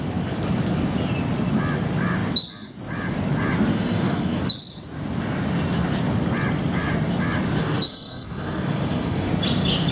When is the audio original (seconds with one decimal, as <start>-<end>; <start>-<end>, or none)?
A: 0.0-3.7; 4.4-7.6; 9.3-9.9